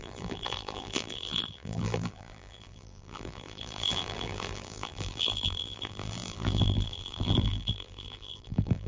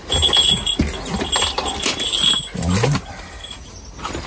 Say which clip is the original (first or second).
second